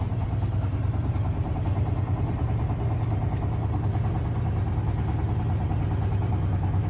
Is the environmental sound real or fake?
real